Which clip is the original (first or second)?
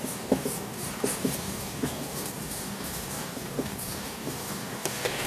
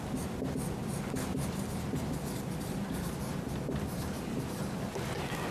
second